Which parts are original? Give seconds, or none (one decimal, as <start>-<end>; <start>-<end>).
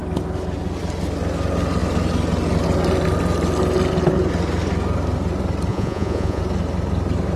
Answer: 0.0-5.7; 6.4-7.4